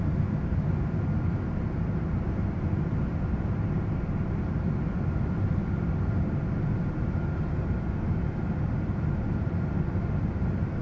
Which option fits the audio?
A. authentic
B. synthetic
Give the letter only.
A